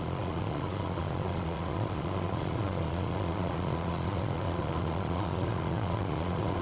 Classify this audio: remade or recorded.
remade